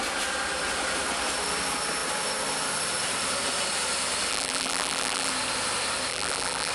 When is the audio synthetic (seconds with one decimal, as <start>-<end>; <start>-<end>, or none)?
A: 4.3-5.3; 6.1-6.7